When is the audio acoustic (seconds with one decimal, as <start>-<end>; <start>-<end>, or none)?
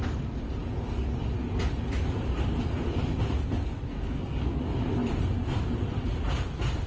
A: 0.0-3.9; 4.6-6.9